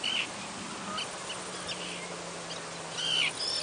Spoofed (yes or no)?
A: no